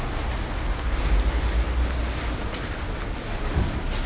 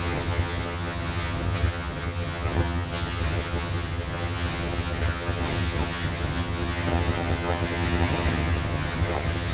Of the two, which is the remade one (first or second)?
second